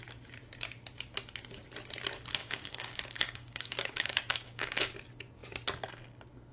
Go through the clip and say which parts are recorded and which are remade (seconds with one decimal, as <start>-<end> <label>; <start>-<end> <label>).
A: 0.0-2.4 recorded; 2.4-4.9 remade; 4.9-6.5 recorded